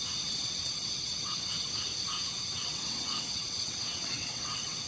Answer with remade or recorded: remade